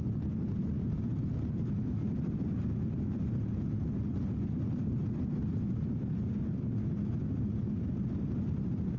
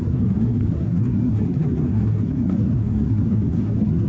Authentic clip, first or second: first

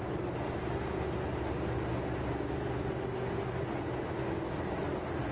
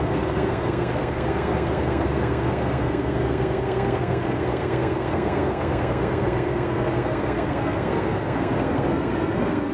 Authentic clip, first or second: first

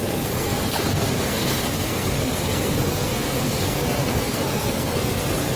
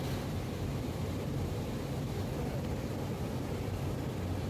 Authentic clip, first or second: second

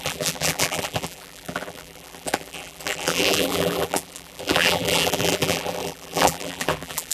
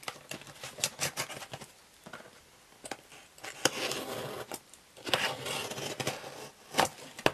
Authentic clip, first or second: second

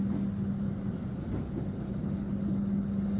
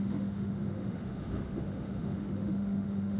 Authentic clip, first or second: first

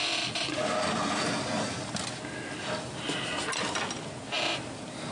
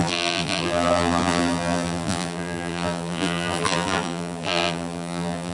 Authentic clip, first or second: first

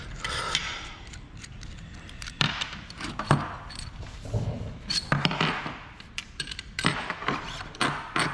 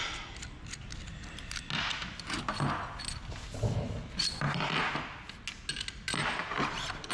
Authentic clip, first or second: second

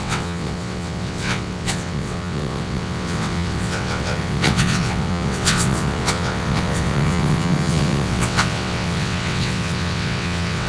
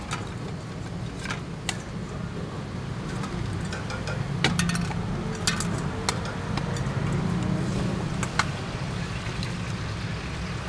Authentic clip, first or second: second